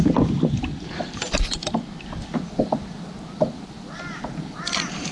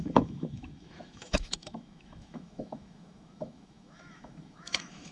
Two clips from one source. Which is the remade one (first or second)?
second